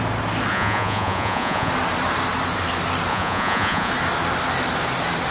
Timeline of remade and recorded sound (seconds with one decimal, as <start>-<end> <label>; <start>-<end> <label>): 0.0-0.5 recorded; 0.5-1.7 remade; 1.7-3.1 recorded; 3.1-3.9 remade; 3.9-5.3 recorded